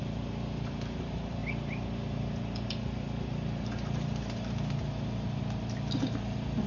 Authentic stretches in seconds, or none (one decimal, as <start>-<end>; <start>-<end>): 0.0-6.7